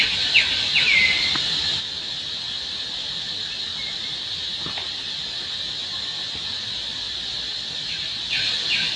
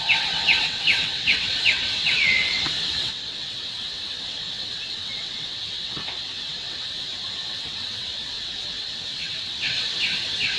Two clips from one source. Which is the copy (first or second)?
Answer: second